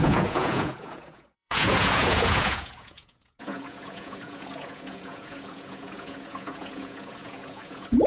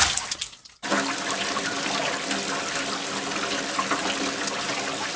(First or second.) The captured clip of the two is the second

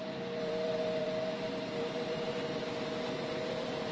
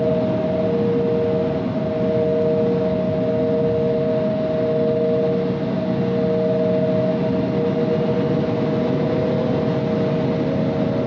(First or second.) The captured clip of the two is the second